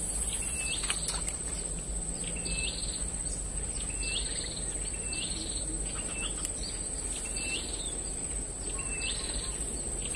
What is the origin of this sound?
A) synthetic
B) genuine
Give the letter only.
B